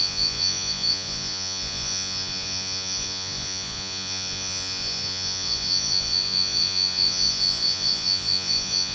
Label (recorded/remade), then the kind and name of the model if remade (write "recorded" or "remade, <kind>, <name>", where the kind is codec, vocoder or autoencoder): remade, vocoder, Vocos